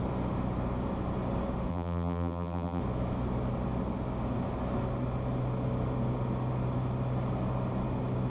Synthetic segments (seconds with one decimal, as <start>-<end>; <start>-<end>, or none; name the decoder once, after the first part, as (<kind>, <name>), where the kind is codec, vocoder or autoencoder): 1.7-2.8 (vocoder, BigVGAN v2)